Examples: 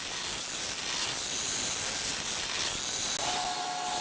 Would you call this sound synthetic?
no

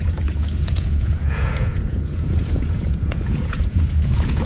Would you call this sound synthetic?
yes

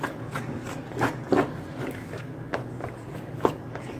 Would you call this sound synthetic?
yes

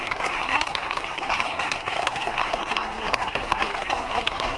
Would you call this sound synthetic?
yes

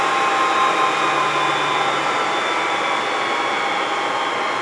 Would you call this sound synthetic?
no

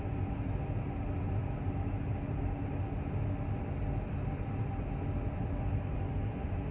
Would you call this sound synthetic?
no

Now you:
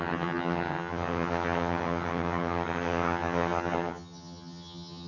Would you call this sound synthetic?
yes